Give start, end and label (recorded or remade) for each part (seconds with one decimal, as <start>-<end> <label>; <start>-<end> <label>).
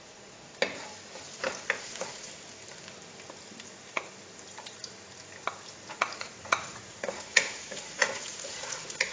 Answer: 0.0-0.5 remade; 0.5-1.8 recorded; 1.8-2.3 remade; 2.3-5.9 recorded; 5.9-9.1 remade